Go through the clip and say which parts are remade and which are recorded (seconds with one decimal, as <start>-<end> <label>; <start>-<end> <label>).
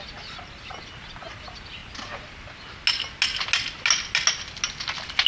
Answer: 0.0-5.3 recorded